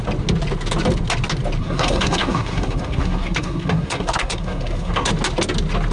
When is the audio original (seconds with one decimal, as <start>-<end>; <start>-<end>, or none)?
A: 0.0-1.6; 5.1-5.9